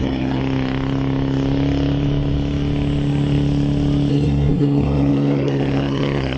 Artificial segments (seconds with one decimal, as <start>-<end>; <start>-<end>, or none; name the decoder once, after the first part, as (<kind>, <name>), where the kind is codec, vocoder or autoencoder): 0.0-0.4 (codec, SNAC); 4.1-6.4

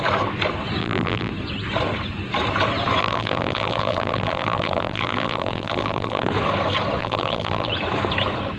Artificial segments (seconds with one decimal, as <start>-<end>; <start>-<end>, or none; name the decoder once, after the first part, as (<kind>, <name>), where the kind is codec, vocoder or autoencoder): 0.8-1.3 (vocoder, BigVGAN v2); 3.0-6.3; 7.0-7.7

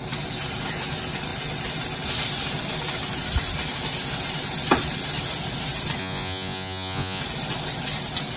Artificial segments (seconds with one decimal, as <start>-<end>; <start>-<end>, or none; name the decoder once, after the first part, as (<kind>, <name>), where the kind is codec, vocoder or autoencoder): 6.0-7.2 (vocoder, Vocos)